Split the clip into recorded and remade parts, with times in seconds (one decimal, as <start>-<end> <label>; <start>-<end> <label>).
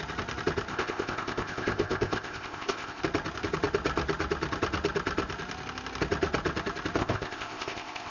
0.0-0.7 recorded; 0.7-3.0 remade; 3.0-7.0 recorded; 7.0-8.1 remade